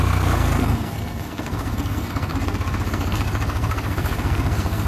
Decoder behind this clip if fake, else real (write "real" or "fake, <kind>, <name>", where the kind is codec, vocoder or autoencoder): fake, codec, SNAC